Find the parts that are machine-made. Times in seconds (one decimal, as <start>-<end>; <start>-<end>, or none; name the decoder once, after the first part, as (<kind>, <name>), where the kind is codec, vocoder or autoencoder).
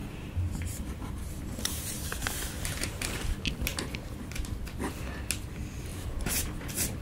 0.0-3.2 (vocoder, BigVGAN v2); 5.9-6.6